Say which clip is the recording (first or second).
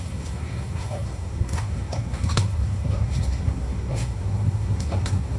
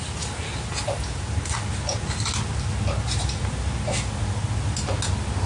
second